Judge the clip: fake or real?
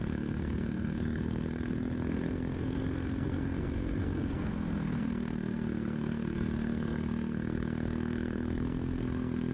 fake